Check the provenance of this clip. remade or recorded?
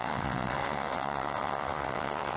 remade